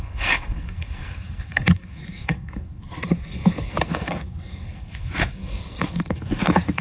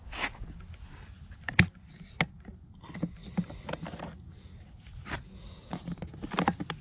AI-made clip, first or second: first